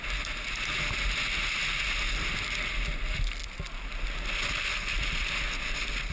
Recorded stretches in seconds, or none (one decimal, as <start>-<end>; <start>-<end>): 0.0-6.1